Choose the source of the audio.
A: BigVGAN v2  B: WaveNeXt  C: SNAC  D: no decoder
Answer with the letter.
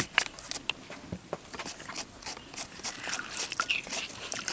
D